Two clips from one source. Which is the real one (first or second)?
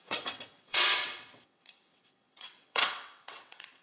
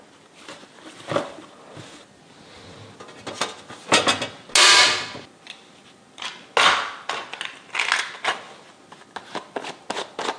second